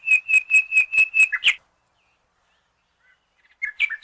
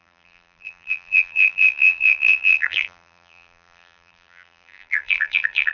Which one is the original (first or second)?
first